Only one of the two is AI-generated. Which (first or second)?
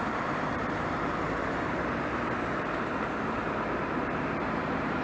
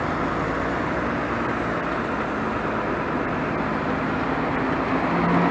first